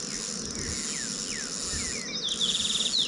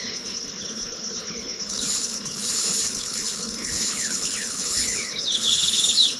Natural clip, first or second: first